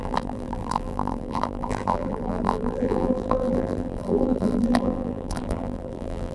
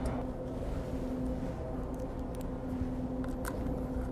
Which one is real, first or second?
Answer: second